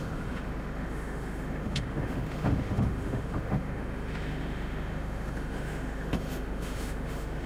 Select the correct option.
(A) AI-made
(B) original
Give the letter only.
A